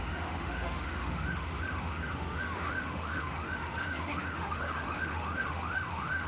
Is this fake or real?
fake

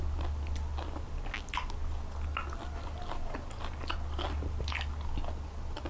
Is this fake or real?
real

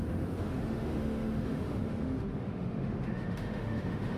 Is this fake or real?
fake